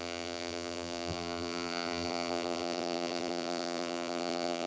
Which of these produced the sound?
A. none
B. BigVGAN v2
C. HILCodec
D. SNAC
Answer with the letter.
B